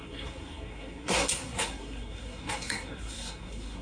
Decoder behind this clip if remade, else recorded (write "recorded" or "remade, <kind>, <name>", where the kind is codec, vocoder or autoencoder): remade, codec, SNAC